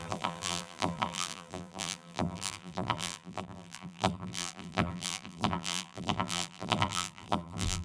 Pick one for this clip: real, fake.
fake